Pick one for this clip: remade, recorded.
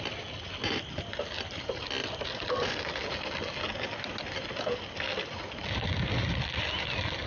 recorded